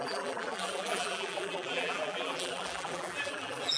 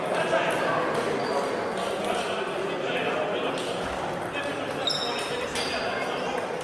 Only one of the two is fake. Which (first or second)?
first